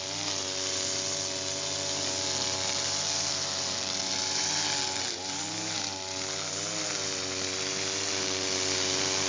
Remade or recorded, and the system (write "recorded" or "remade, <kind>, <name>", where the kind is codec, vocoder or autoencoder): recorded